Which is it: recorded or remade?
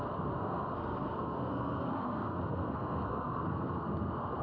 remade